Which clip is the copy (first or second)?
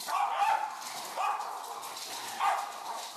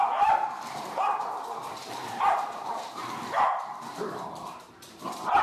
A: second